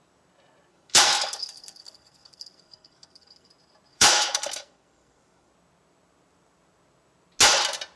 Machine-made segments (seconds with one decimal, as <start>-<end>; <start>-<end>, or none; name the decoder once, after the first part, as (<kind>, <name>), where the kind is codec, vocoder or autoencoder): 0.7-3.5 (codec, SNAC); 3.9-5.5